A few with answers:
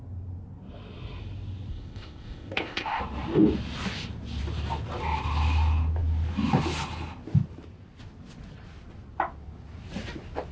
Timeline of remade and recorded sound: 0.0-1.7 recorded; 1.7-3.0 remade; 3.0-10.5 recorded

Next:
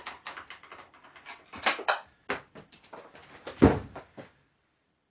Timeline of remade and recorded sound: 0.0-5.1 recorded

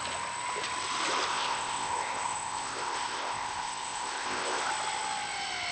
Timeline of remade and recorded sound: 0.0-1.3 recorded; 1.3-4.7 remade; 4.7-5.7 recorded

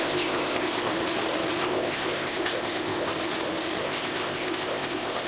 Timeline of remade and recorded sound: 0.0-0.9 remade; 0.9-1.6 recorded; 1.6-3.1 remade; 3.1-3.8 recorded; 3.8-5.3 remade

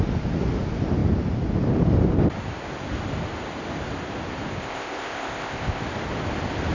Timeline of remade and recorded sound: 0.0-4.6 recorded; 4.6-5.8 remade; 5.8-6.7 recorded

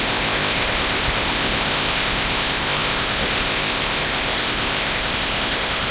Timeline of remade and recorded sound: 0.0-5.9 remade

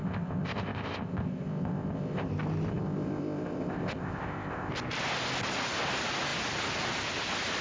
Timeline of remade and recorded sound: 0.0-2.3 remade; 2.3-2.7 recorded; 2.7-4.7 remade; 4.7-7.6 recorded

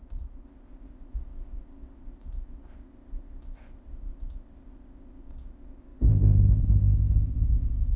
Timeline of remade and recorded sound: 0.0-8.0 remade